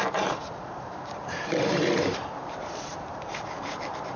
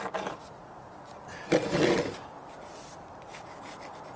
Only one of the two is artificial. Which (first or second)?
first